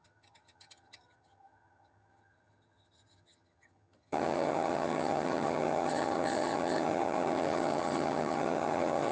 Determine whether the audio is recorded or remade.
remade